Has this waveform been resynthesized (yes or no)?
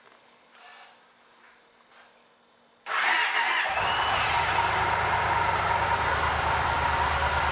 no